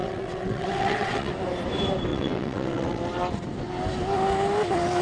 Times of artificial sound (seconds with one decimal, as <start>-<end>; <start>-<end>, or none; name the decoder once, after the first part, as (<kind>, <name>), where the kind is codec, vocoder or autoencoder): 0.0-1.3 (vocoder, WaveNeXt); 2.1-3.0